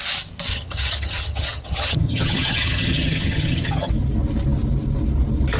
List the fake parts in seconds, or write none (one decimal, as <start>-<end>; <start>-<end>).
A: 0.5-3.9